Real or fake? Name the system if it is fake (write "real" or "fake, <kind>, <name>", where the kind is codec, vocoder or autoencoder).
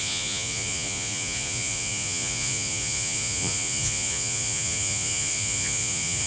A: fake, vocoder, Vocos